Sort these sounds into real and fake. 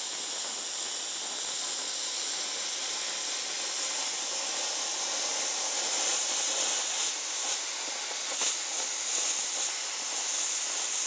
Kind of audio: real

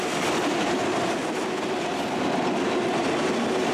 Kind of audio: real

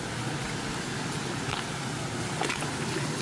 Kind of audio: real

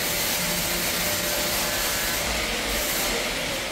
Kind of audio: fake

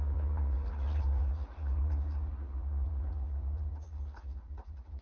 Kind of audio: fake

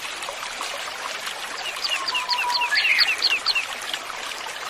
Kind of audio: real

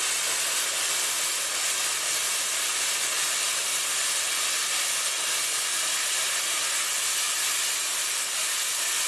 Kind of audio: real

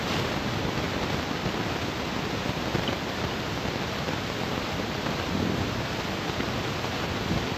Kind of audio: real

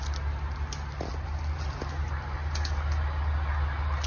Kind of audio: real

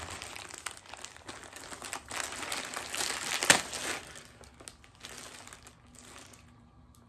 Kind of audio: real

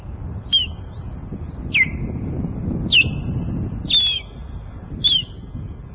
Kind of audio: real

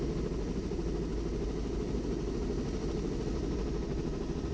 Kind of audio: real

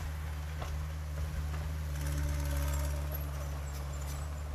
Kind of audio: real